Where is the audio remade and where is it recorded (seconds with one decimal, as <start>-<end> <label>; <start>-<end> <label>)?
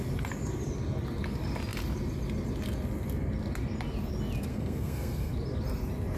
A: 0.0-4.5 recorded; 4.5-5.3 remade; 5.3-6.2 recorded